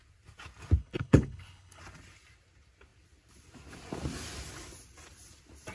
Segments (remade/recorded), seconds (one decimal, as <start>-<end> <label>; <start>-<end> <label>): 0.0-0.8 recorded; 0.8-1.8 remade; 1.8-5.7 recorded